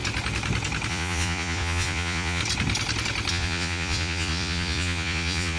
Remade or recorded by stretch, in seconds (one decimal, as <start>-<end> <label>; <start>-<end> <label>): 0.0-0.9 recorded; 0.9-2.4 remade; 2.4-3.3 recorded; 3.3-5.6 remade